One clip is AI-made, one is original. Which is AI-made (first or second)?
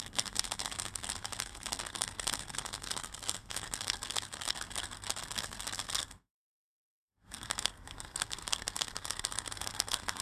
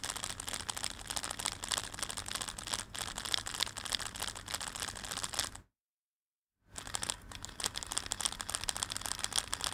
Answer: first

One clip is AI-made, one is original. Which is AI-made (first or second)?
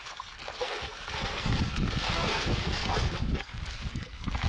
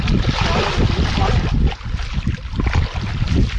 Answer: first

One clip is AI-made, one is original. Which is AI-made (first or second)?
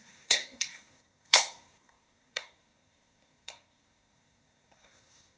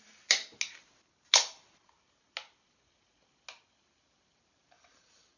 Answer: first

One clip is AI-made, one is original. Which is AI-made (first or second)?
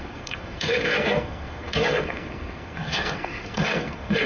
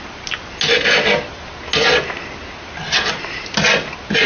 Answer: first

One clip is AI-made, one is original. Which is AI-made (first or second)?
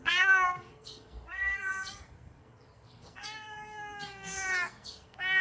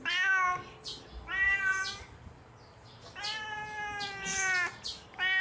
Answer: first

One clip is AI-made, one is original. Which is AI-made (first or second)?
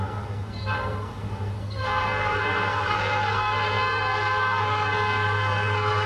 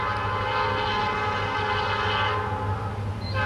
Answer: first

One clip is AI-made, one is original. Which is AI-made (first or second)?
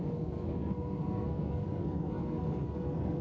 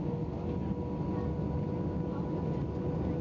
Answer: first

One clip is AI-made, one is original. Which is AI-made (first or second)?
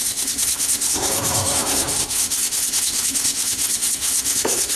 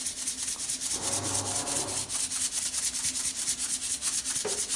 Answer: first